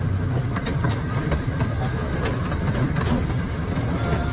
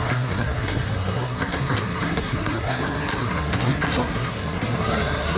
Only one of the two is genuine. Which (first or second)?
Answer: first